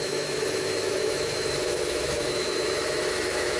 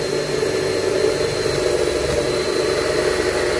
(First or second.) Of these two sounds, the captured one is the second